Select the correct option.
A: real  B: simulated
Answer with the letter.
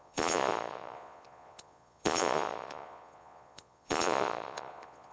B